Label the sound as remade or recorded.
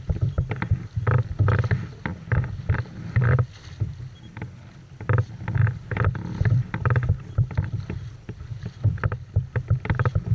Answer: recorded